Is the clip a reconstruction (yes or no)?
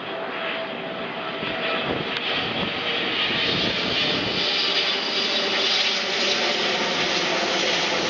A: no